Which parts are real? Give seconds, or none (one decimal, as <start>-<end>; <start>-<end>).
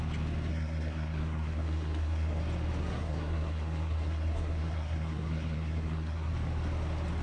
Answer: 0.0-0.5; 2.4-2.8; 6.3-7.2